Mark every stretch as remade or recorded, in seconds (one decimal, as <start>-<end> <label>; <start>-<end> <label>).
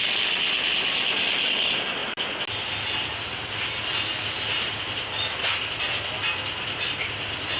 0.0-7.6 recorded